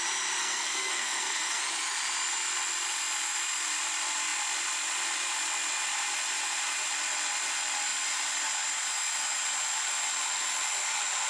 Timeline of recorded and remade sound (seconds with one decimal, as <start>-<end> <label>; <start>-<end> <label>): 0.0-0.4 recorded; 0.4-1.6 remade; 1.6-11.3 recorded

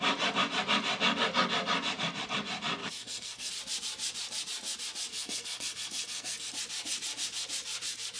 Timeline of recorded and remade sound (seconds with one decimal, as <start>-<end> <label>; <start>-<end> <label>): 0.0-2.8 recorded; 2.8-3.5 remade; 3.5-5.1 recorded; 5.1-6.5 remade; 6.5-8.2 recorded

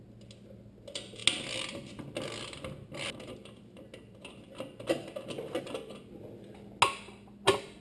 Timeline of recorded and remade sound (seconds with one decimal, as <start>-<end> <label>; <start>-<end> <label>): 0.0-7.8 recorded

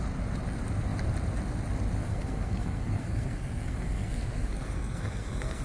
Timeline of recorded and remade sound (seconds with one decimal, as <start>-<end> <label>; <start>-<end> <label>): 0.0-2.0 recorded; 2.0-5.6 remade

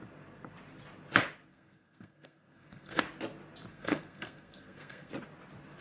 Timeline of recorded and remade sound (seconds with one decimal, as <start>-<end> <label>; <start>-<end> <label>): 0.0-1.5 recorded; 1.5-3.0 remade; 3.0-3.7 recorded; 3.7-5.1 remade; 5.1-5.8 recorded

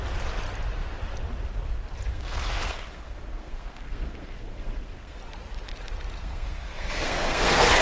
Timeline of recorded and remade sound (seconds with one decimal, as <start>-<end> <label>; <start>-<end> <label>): 0.0-2.1 recorded; 2.1-5.2 remade; 5.2-6.2 recorded; 6.2-7.8 remade